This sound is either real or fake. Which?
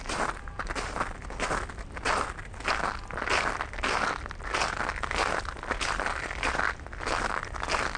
real